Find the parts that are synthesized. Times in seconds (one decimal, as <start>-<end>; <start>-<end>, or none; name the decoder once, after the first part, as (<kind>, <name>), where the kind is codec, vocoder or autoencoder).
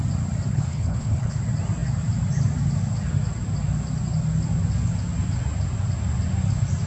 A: 0.5-1.4 (codec, HILCodec)